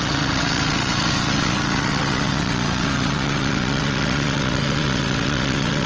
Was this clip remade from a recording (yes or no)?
yes